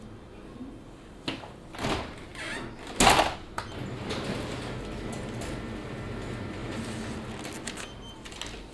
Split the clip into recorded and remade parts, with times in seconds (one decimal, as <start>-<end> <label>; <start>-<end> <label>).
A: 0.0-8.7 recorded